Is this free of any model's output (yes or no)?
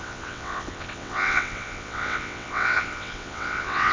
no